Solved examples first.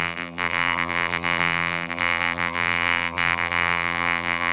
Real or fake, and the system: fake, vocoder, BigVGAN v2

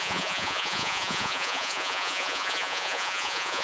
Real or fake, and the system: fake, vocoder, Vocos